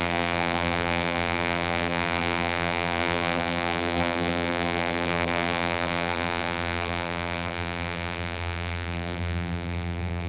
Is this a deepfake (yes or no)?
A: yes